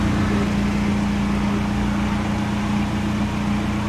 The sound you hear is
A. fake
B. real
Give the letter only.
B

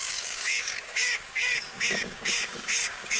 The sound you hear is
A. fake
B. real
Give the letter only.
A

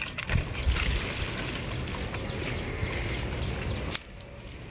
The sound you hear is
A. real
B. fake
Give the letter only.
A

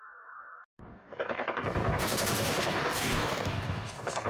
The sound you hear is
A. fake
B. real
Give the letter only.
A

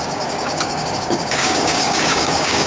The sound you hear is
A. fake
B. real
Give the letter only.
A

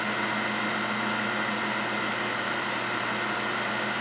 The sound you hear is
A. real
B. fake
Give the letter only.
A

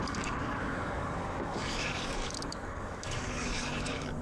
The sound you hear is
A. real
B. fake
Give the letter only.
B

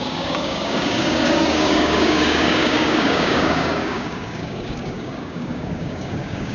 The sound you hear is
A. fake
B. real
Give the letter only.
A